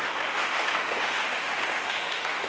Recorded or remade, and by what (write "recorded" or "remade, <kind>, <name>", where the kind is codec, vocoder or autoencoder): remade, autoencoder, DAC-VAE